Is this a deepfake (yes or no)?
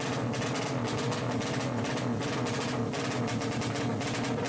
no